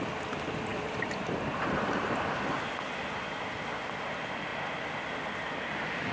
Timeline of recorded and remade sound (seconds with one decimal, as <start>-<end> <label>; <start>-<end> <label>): 0.0-0.7 recorded; 0.7-2.2 remade; 2.2-6.1 recorded